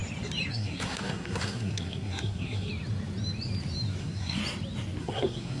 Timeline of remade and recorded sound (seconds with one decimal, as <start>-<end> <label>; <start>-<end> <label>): 0.0-0.5 recorded; 0.5-2.7 remade; 2.7-4.0 recorded; 4.0-4.4 remade; 4.4-5.0 recorded; 5.0-5.6 remade